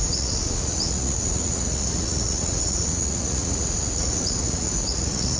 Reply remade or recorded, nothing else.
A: remade